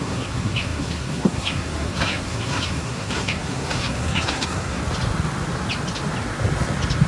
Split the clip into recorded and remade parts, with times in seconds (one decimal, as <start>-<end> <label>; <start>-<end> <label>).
0.0-4.8 remade; 4.8-7.1 recorded